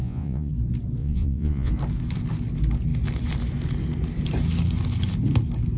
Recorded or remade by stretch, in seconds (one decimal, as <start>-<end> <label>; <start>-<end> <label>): 0.0-0.5 remade; 0.5-1.0 recorded; 1.0-1.7 remade; 1.7-5.8 recorded